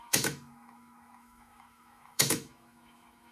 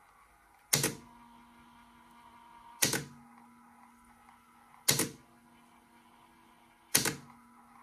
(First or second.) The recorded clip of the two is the second